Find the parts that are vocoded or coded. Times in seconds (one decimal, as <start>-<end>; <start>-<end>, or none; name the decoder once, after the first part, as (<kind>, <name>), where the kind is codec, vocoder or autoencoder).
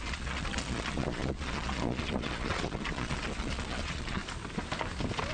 0.0-4.2 (vocoder, Vocos)